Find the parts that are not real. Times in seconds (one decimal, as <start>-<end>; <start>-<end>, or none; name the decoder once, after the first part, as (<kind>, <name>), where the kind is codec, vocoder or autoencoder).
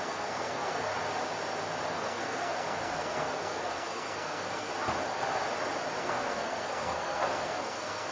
0.0-0.9 (codec, SNAC); 1.9-4.7; 6.0-8.1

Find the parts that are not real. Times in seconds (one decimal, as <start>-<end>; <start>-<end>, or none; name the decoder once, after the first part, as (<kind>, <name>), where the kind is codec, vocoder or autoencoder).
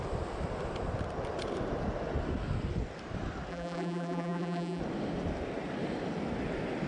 3.5-4.8 (vocoder, BigVGAN v2)